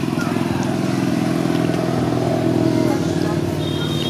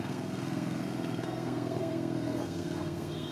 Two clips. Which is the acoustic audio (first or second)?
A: first